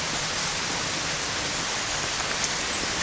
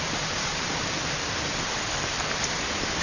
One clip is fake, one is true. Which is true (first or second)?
first